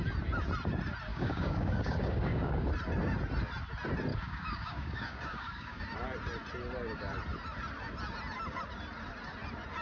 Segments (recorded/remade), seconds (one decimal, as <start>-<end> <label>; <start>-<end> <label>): 0.0-1.1 recorded; 1.1-2.7 remade; 2.7-4.1 recorded; 4.1-5.8 remade; 5.8-9.8 recorded